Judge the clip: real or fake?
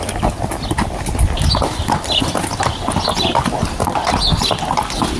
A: real